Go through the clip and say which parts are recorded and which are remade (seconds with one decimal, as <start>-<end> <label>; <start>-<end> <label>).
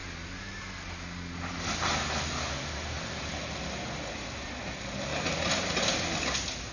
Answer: 0.0-6.7 recorded